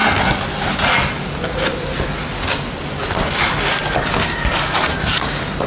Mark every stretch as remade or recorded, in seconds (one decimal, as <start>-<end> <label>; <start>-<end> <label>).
0.0-5.7 recorded